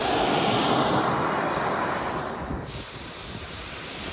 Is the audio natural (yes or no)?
yes